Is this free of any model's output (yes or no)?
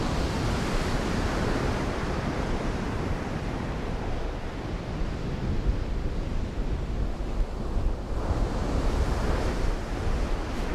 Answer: no